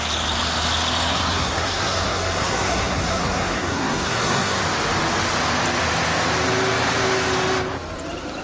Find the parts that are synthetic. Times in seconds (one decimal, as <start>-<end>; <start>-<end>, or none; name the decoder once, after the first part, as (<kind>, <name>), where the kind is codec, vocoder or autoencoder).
1.1-4.6 (codec, SNAC)